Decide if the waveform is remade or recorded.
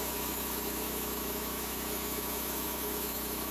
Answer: remade